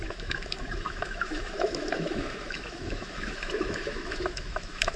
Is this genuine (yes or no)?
no